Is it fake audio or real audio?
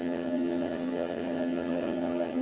fake